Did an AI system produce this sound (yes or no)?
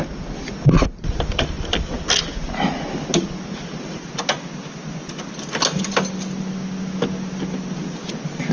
no